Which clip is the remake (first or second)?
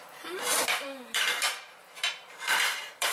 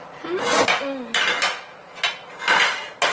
first